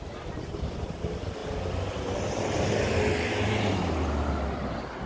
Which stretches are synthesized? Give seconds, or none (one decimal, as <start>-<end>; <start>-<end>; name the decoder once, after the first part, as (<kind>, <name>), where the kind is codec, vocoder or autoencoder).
none